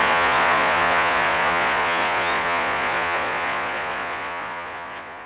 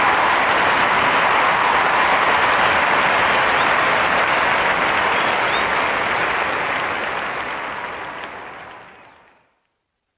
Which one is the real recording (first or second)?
second